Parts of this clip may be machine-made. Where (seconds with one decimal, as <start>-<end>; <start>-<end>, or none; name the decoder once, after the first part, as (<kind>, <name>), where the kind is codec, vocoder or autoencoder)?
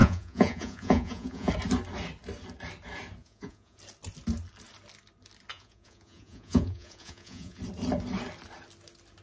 0.0-1.5 (vocoder, Vocos); 3.2-3.8; 5.5-7.6